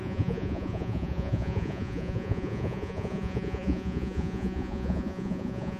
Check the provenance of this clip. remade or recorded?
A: remade